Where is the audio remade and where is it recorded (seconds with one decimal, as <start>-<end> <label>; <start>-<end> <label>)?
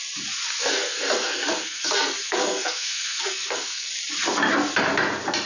0.0-0.6 recorded; 0.6-3.9 remade; 3.9-5.5 recorded